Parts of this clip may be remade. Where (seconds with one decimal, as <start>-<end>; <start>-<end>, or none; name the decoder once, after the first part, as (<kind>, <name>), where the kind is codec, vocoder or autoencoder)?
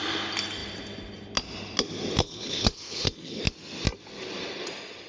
2.2-3.4 (codec, HILCodec)